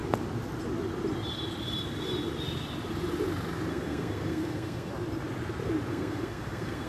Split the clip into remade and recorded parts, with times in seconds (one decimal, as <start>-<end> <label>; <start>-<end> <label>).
0.0-3.7 recorded; 3.7-4.9 remade; 4.9-5.9 recorded; 5.9-6.9 remade